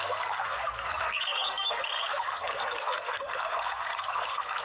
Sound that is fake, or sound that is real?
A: fake